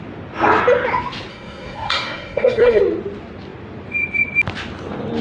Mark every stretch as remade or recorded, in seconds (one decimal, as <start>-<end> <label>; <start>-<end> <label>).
0.0-1.3 recorded; 1.3-2.8 remade; 2.8-5.2 recorded